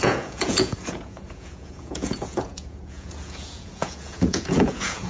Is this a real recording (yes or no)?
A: no